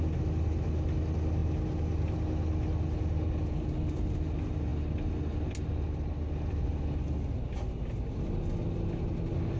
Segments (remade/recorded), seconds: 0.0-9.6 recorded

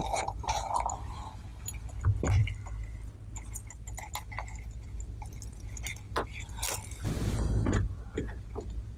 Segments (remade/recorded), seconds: 0.0-9.0 recorded

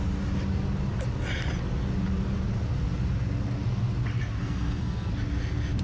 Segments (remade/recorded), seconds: 0.0-4.4 recorded; 4.4-5.1 remade; 5.1-5.8 recorded

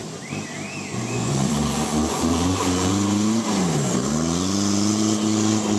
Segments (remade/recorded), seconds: 0.0-0.9 recorded; 0.9-2.9 remade; 2.9-5.8 recorded